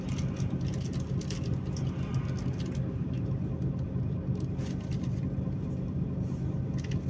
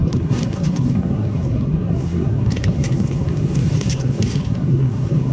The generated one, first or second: second